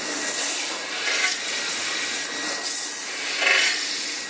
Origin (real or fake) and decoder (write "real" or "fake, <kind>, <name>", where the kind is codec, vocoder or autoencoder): real